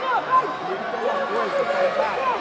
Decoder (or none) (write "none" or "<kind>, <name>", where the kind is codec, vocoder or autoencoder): none